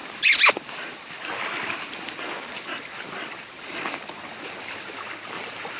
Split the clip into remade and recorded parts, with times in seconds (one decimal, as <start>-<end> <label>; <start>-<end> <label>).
0.0-5.8 recorded